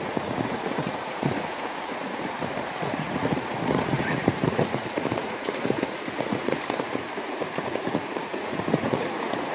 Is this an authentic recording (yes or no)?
no